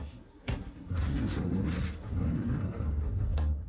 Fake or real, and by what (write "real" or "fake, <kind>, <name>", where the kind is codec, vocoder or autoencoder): fake, codec, SNAC